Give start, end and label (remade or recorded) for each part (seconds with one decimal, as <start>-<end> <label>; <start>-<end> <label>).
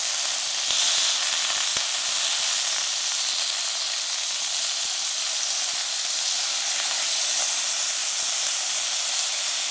0.0-9.7 recorded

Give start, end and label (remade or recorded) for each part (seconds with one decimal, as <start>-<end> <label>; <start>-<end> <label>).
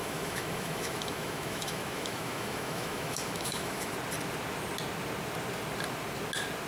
0.0-3.9 remade; 3.9-6.7 recorded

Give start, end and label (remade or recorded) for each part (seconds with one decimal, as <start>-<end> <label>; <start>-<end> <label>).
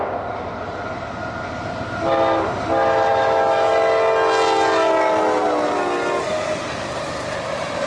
0.0-3.1 recorded; 3.1-3.7 remade; 3.7-7.9 recorded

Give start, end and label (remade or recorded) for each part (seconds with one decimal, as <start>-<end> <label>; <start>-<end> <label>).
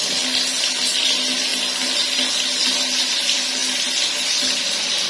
0.0-5.1 recorded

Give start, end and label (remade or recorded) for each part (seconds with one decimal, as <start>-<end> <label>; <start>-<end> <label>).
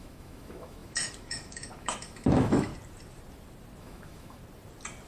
0.0-2.7 remade; 2.7-3.8 recorded; 3.8-4.4 remade; 4.4-5.1 recorded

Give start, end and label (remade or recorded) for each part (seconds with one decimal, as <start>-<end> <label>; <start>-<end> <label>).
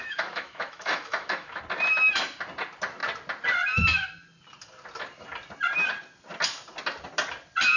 0.0-1.6 remade; 1.6-7.8 recorded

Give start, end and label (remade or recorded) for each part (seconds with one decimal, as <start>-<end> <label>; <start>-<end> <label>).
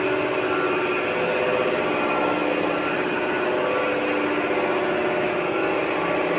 0.0-6.4 recorded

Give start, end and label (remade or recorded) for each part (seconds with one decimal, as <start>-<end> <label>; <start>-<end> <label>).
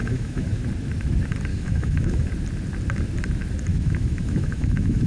0.0-0.5 remade; 0.5-1.5 recorded; 1.5-2.3 remade; 2.3-3.7 recorded; 3.7-5.1 remade